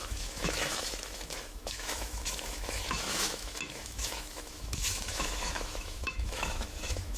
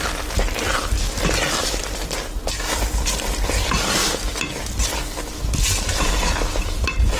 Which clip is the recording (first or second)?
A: second